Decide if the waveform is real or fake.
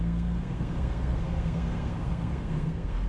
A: fake